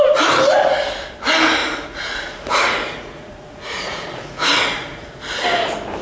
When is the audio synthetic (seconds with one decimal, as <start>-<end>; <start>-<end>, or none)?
1.6-5.2